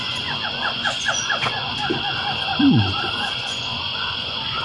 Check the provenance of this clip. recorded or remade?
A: remade